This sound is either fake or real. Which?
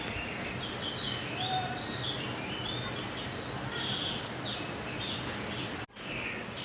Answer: real